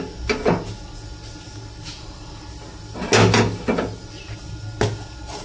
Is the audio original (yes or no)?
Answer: yes